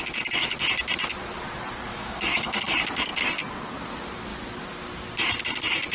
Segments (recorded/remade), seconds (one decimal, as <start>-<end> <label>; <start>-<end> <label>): 0.0-1.9 recorded; 1.9-2.6 remade; 2.6-5.9 recorded